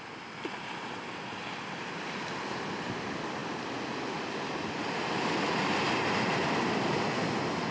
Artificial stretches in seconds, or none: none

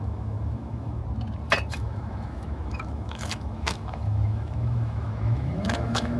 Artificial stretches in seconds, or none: 0.0-1.0 (autoencoder, DAC-VAE); 1.7-6.2

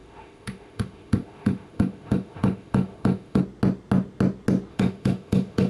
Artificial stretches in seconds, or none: 0.0-3.4 (autoencoder, DAC-VAE); 4.7-5.7